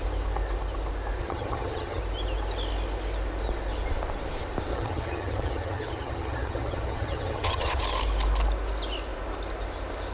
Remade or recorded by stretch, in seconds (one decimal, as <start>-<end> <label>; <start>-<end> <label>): 0.0-1.2 recorded; 1.2-2.0 remade; 2.0-4.7 recorded; 4.7-7.8 remade; 7.8-10.1 recorded